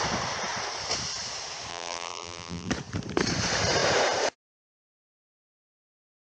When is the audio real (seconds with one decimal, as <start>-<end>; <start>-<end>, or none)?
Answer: 0.0-1.7; 2.7-6.3